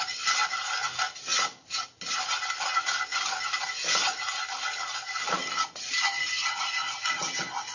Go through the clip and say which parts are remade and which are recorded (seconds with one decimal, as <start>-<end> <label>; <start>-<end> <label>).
0.0-7.7 recorded